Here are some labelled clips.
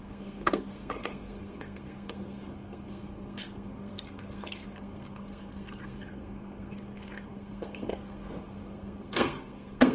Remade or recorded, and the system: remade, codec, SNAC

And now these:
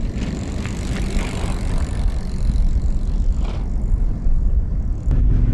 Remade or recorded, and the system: recorded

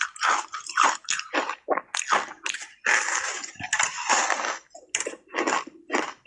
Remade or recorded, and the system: recorded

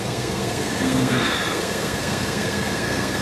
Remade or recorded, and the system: remade, codec, SNAC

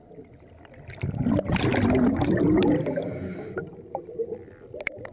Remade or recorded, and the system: recorded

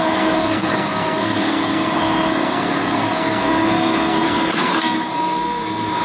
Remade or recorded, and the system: remade, codec, SNAC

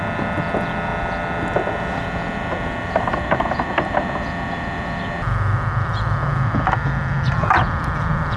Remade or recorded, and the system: recorded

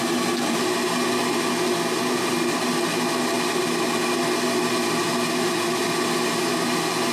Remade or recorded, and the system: recorded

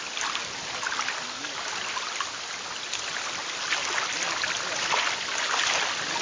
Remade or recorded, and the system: recorded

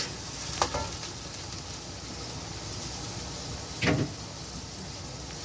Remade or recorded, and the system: recorded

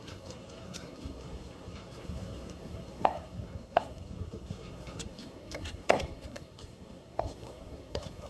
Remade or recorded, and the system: remade, codec, SNAC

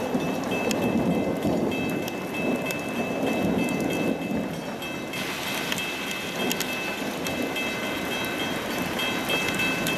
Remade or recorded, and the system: recorded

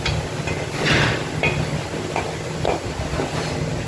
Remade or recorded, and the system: recorded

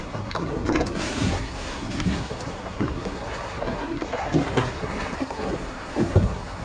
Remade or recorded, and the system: remade, codec, SNAC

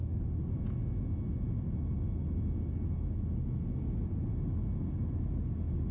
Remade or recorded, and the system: recorded